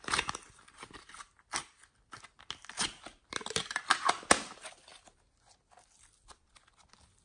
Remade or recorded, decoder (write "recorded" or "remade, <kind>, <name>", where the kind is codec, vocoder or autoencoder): recorded